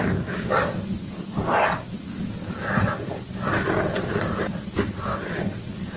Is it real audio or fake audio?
fake